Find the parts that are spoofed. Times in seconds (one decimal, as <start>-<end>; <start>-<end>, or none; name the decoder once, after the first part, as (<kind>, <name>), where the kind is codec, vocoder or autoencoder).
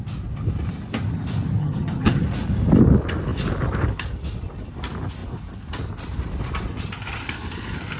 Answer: 1.6-2.2 (vocoder, HiFi-GAN)